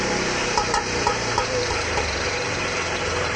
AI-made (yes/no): yes